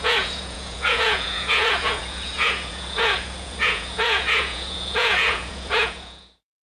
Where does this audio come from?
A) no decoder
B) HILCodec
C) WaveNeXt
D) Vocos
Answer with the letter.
D